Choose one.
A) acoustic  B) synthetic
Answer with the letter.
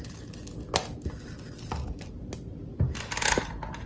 A